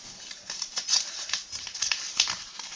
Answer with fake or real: fake